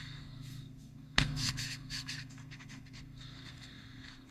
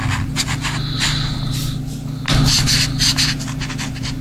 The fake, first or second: first